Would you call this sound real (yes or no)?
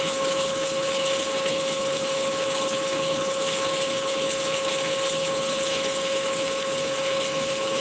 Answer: no